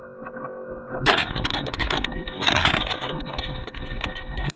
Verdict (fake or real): fake